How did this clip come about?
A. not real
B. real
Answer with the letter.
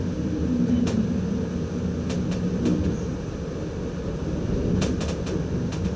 B